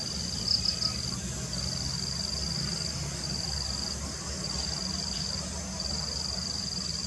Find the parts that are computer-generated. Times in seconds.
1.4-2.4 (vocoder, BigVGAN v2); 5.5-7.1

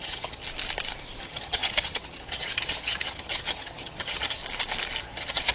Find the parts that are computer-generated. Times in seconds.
0.0-0.4 (vocoder, HiFi-GAN); 1.2-4.4; 5.0-5.5